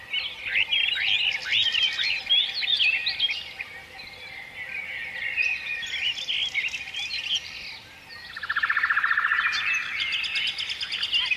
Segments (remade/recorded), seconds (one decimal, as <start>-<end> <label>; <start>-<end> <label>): 0.0-11.4 recorded